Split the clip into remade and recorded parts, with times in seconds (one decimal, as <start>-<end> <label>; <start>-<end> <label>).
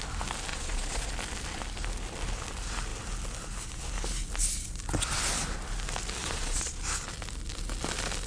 0.0-0.5 recorded; 0.5-1.1 remade; 1.1-6.2 recorded; 6.2-6.8 remade; 6.8-8.3 recorded